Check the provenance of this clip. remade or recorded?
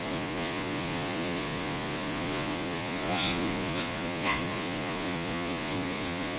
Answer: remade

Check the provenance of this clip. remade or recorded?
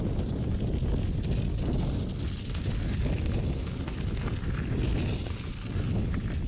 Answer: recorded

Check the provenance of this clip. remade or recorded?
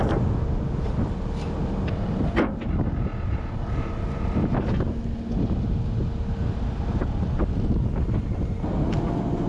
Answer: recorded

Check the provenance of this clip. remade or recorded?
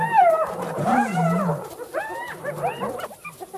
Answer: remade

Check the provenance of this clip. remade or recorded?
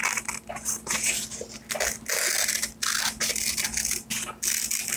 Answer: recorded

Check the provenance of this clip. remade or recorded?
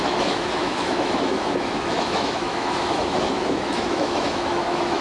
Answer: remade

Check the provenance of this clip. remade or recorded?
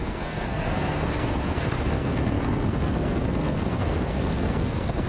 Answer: remade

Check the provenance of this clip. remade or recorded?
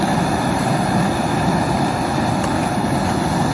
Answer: recorded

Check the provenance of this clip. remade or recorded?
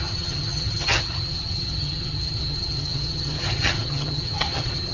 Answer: remade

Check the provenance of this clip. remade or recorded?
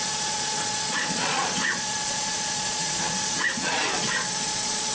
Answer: remade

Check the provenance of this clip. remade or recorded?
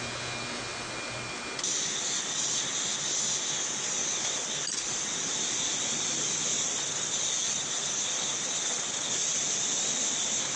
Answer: recorded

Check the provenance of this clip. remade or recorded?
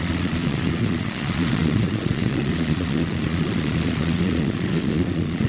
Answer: remade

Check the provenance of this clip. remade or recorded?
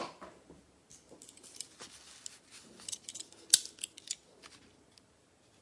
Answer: recorded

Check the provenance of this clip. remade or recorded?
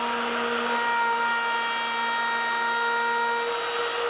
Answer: recorded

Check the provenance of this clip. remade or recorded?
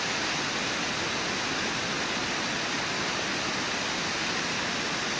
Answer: recorded